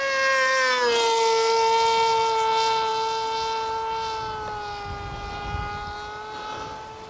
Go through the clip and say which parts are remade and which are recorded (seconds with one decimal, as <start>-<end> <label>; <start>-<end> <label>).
0.0-7.1 recorded